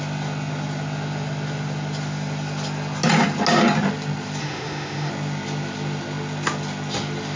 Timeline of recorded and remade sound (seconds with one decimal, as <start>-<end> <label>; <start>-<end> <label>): 0.0-4.4 recorded; 4.4-5.1 remade; 5.1-7.4 recorded